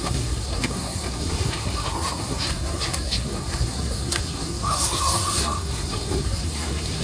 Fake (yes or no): yes